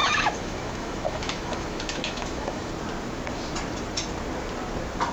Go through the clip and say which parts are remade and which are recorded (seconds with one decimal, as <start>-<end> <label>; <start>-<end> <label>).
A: 0.0-2.7 remade; 2.7-5.1 recorded